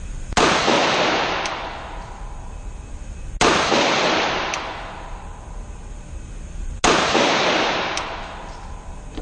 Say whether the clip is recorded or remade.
recorded